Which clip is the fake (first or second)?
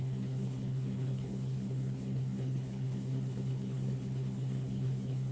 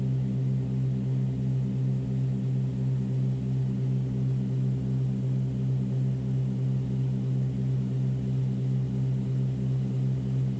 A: first